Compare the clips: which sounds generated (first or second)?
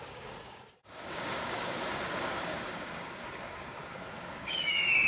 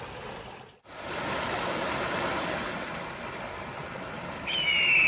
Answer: first